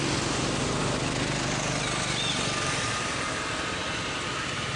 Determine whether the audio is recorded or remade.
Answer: recorded